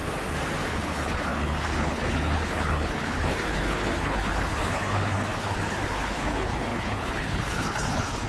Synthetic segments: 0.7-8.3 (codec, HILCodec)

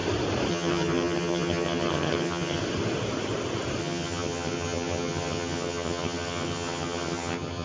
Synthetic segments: 0.5-2.6 (vocoder, HiFi-GAN); 3.8-7.6

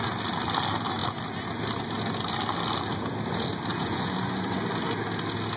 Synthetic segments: 3.7-4.6 (vocoder, Vocos)

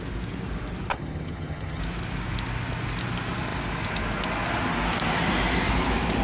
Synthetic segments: 0.9-1.8 (vocoder, HiFi-GAN)